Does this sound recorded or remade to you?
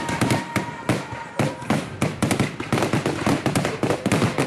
remade